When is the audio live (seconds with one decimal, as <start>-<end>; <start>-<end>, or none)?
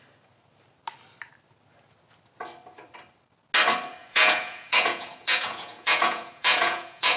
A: 0.0-4.0